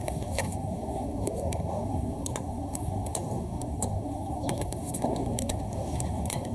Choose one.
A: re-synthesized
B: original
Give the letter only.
A